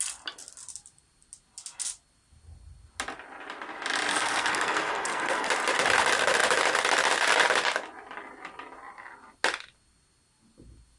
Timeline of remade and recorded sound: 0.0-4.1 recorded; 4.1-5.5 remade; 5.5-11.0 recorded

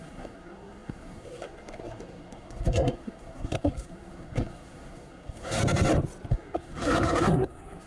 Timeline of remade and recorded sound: 0.0-5.6 remade; 5.6-6.3 recorded; 6.3-7.9 remade

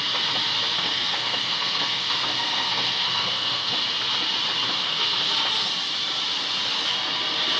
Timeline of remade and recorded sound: 0.0-0.7 recorded; 0.7-3.7 remade; 3.7-4.8 recorded; 4.8-5.3 remade; 5.3-7.6 recorded

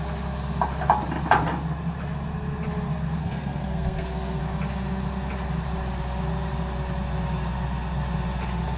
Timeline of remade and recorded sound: 0.0-3.2 recorded; 3.2-4.4 remade; 4.4-8.8 recorded

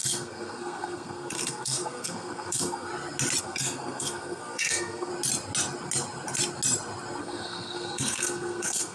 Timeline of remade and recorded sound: 0.0-2.9 remade; 2.9-3.4 recorded; 3.4-5.1 remade; 5.1-7.2 recorded; 7.2-8.9 remade